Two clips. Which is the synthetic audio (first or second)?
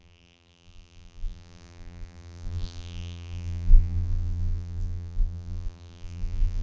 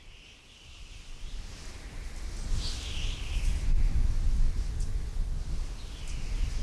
first